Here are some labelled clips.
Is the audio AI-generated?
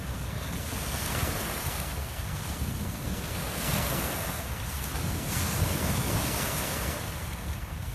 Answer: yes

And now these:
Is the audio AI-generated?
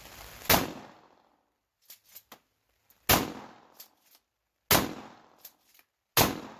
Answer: no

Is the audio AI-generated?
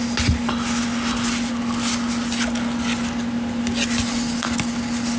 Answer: no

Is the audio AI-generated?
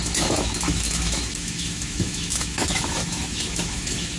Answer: yes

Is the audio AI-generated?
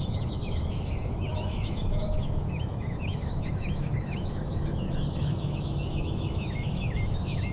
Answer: yes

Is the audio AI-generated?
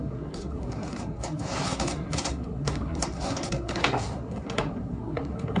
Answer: yes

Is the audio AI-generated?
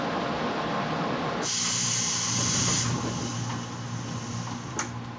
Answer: no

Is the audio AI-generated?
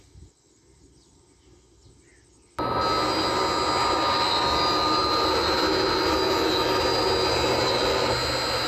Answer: no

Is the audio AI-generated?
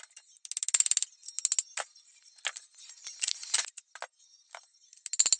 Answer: no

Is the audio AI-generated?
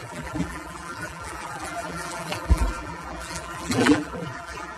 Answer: yes